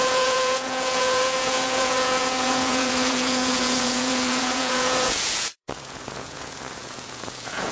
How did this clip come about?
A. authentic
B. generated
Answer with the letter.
B